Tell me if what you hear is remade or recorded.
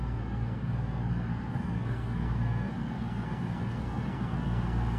remade